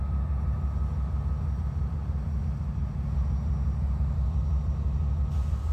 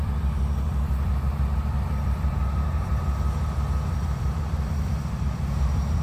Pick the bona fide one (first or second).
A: first